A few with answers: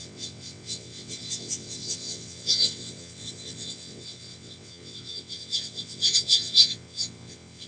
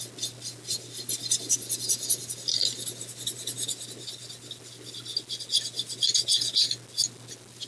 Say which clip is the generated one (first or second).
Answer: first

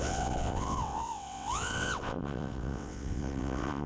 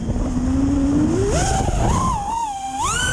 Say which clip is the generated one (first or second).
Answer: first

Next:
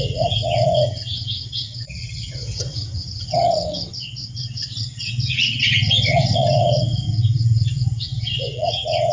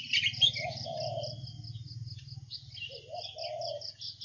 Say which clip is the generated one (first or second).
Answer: first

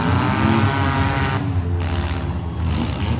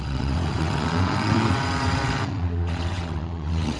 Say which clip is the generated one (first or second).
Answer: second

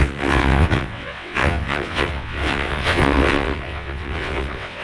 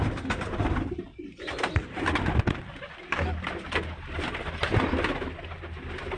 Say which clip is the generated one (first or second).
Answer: first